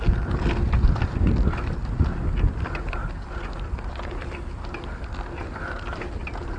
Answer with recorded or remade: recorded